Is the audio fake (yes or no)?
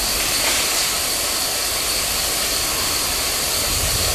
no